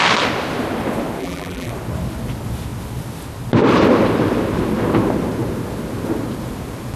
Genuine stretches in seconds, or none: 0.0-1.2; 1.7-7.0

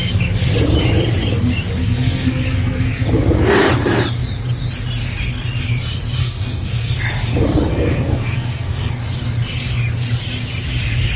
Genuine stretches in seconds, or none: 0.0-1.8; 3.0-6.2; 6.9-7.7; 8.9-11.2

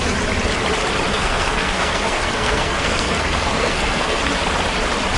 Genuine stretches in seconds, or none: 0.0-1.1; 4.2-5.2

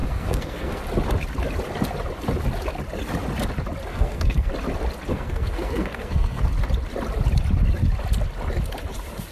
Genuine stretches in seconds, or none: 0.8-3.9; 4.5-5.1; 6.4-9.3

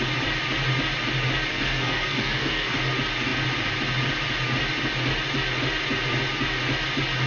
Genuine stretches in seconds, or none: 0.0-1.5; 2.8-7.3